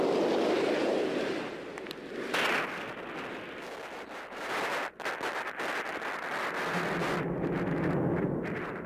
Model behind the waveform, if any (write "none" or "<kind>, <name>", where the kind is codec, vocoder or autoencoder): none